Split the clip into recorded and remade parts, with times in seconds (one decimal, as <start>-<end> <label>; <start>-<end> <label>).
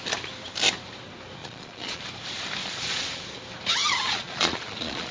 0.0-1.4 recorded; 1.4-2.0 remade; 2.0-2.6 recorded; 2.6-3.2 remade; 3.2-3.8 recorded; 3.8-5.1 remade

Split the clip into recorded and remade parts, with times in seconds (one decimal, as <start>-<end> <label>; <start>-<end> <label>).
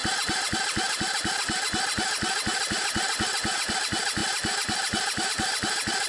0.0-6.1 recorded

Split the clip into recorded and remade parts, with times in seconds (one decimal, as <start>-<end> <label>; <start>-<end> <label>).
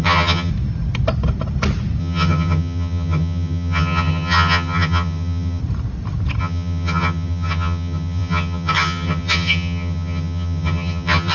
0.0-0.5 remade; 0.5-2.0 recorded; 2.0-5.6 remade; 5.6-6.4 recorded; 6.4-11.3 remade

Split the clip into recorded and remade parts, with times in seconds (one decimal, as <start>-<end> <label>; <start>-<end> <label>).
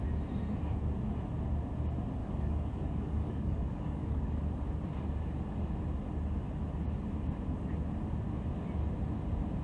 0.0-2.2 recorded; 2.2-4.4 remade; 4.4-9.6 recorded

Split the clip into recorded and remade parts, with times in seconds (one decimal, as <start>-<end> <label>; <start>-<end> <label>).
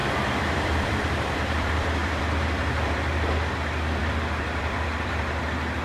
0.0-3.5 remade; 3.5-4.0 recorded; 4.0-5.2 remade; 5.2-5.8 recorded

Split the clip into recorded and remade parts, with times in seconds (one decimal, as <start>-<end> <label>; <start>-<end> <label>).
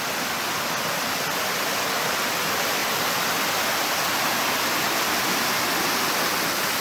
0.0-2.8 recorded; 2.8-3.7 remade; 3.7-6.8 recorded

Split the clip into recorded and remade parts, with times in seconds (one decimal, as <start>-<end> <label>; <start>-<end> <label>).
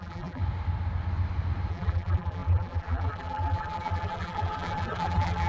0.0-0.4 remade; 0.4-1.7 recorded; 1.7-5.5 remade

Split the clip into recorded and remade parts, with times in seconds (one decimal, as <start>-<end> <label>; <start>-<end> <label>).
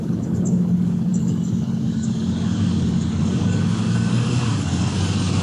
0.0-5.4 remade